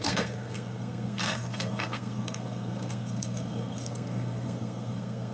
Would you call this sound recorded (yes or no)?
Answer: no